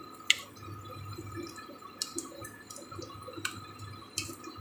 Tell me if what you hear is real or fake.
real